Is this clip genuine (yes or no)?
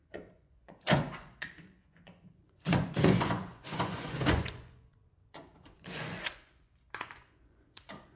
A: no